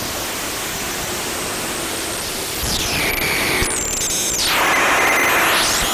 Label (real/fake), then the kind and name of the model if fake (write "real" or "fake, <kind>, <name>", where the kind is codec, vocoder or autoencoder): real